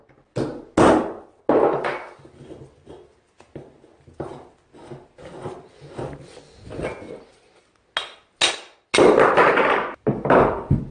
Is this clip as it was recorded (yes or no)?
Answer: yes